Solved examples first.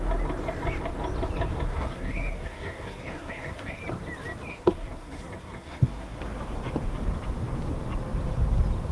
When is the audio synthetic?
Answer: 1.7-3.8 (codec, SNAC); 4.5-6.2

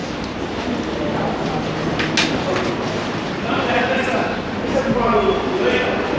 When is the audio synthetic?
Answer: none

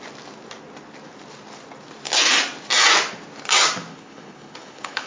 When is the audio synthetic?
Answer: 3.9-5.1 (codec, HILCodec)

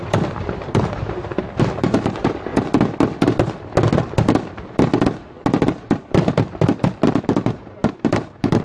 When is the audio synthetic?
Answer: 0.0-2.5 (vocoder, BigVGAN v2); 7.2-8.6

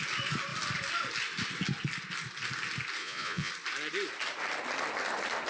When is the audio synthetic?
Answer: 3.0-3.5 (vocoder, Vocos)

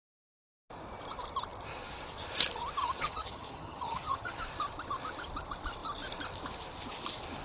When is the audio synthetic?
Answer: 2.8-4.4 (vocoder, HiFi-GAN)